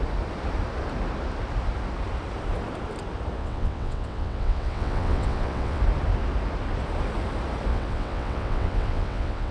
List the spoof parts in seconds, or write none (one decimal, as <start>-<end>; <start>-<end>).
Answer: 3.4-5.8; 7.7-9.5